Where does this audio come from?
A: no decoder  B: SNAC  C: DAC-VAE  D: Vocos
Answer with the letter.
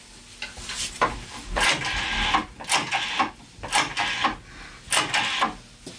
A